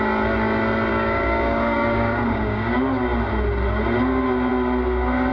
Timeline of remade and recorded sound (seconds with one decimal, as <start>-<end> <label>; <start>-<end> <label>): 0.0-0.9 recorded; 0.9-2.8 remade; 2.8-5.3 recorded